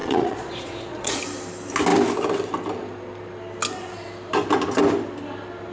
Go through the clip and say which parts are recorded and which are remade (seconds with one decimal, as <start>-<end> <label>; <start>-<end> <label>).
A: 0.0-1.2 remade; 1.2-5.7 recorded